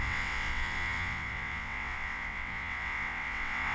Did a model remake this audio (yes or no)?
yes